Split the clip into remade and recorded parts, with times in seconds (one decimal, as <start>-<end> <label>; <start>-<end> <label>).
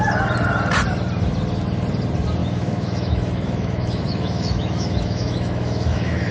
0.0-2.4 recorded; 2.4-6.3 remade